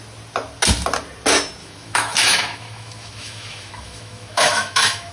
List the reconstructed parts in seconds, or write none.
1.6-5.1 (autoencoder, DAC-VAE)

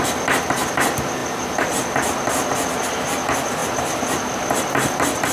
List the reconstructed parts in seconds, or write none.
none

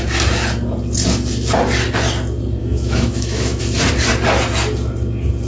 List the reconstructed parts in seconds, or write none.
2.6-3.6 (autoencoder, DAC-VAE)

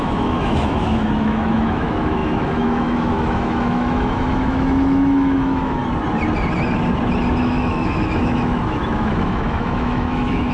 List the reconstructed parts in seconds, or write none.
0.0-5.8 (autoencoder, DAC-VAE); 7.4-10.5

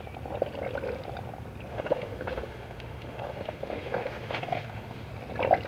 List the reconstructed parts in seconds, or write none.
1.7-5.1 (autoencoder, DAC-VAE)

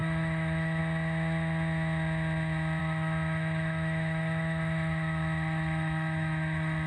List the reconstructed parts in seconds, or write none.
0.0-0.8 (autoencoder, DAC-VAE); 2.8-6.9

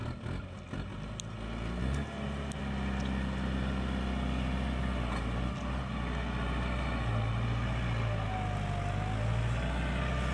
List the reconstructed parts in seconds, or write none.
none